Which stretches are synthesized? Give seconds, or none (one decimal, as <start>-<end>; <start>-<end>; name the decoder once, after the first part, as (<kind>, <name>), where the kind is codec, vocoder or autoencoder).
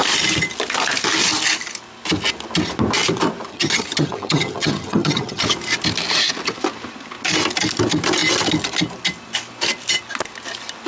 3.5-5.4 (vocoder, HiFi-GAN)